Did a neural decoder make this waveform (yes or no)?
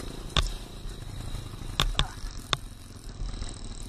no